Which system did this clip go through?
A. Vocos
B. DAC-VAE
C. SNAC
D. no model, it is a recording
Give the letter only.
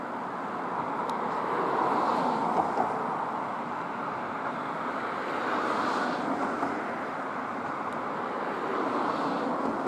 D